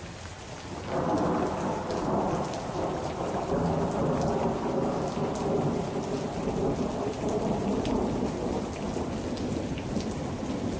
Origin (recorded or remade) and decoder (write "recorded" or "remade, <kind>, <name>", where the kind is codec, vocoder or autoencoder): recorded